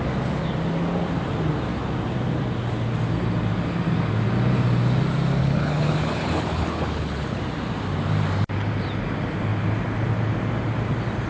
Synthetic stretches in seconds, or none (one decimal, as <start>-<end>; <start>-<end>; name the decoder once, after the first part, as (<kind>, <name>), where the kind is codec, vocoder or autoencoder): 5.4-7.4 (codec, HILCodec)